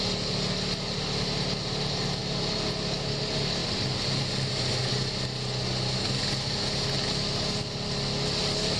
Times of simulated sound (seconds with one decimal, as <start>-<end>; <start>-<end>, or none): none